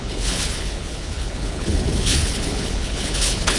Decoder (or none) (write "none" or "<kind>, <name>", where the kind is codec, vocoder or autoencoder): codec, HILCodec